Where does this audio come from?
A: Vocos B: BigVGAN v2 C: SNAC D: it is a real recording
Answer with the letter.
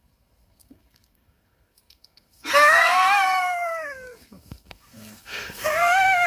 C